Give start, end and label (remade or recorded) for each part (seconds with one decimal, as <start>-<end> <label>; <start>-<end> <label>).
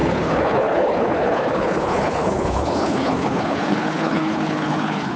0.0-5.2 remade